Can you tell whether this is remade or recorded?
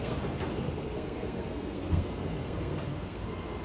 remade